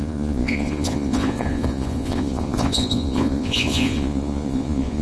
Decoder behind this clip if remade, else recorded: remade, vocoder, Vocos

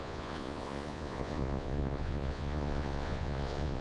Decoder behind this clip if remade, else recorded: remade, vocoder, Vocos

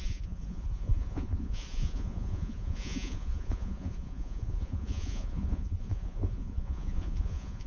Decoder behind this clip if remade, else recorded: remade, vocoder, Vocos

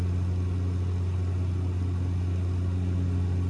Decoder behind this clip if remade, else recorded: recorded